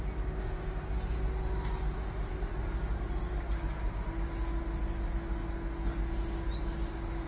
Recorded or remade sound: recorded